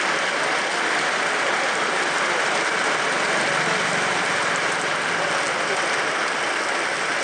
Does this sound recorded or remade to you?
recorded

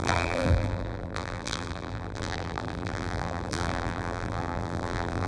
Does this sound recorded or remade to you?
remade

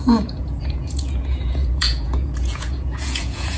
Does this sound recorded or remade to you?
remade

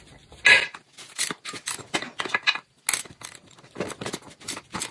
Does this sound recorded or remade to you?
recorded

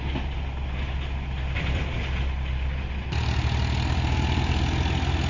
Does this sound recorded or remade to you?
recorded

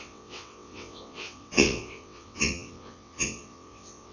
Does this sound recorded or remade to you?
remade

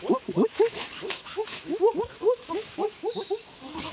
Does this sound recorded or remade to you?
remade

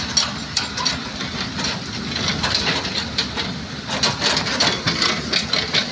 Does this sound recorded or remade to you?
recorded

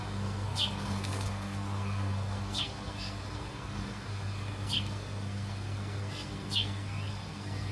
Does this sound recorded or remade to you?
remade